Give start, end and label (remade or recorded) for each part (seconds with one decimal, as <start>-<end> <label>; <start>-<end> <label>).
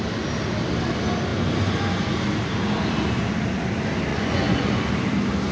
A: 0.0-4.1 recorded; 4.1-4.9 remade; 4.9-5.5 recorded